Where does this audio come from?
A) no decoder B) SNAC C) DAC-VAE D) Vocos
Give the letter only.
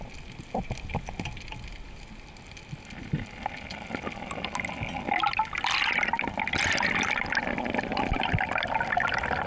A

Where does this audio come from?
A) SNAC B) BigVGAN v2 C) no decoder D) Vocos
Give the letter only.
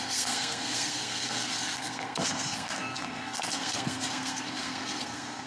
A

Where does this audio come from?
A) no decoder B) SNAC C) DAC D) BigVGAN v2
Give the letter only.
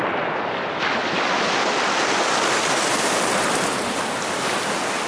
A